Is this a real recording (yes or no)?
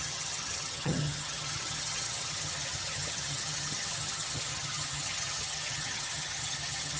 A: no